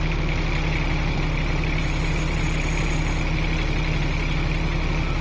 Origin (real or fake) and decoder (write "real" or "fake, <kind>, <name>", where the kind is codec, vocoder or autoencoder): real